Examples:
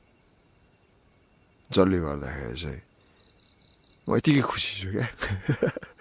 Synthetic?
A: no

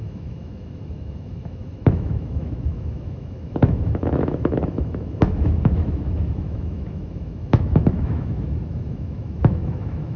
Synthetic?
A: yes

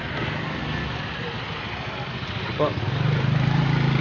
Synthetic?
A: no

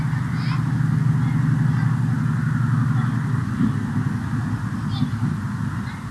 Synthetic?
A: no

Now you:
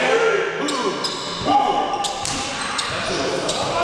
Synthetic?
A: no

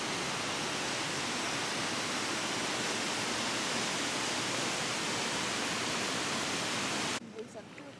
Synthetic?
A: no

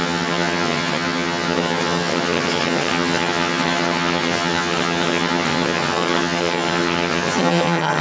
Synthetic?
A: yes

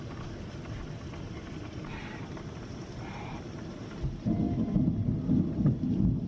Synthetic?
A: no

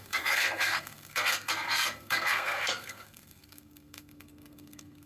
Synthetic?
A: yes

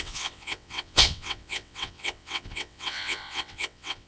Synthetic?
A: yes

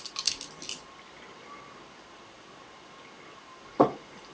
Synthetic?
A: no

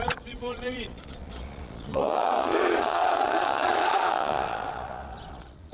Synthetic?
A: yes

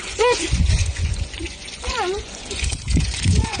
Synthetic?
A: yes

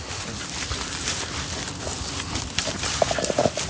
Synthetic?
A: no